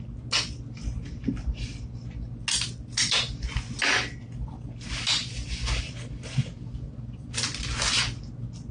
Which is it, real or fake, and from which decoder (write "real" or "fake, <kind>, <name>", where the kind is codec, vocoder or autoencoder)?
real